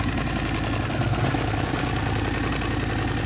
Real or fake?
real